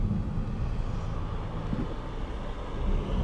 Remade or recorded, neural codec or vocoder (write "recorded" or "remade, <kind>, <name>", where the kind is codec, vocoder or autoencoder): recorded